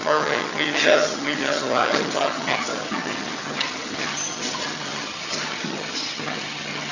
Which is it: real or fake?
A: fake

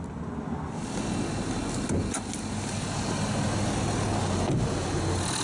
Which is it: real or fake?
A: real